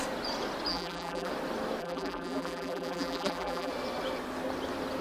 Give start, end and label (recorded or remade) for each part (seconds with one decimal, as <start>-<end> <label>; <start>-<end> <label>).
0.0-0.7 recorded; 0.7-1.3 remade; 1.3-1.8 recorded; 1.8-3.7 remade; 3.7-5.0 recorded